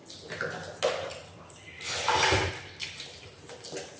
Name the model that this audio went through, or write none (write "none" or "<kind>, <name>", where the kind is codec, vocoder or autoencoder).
none